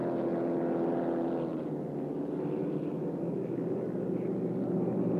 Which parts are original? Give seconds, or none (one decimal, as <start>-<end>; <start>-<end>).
0.0-5.2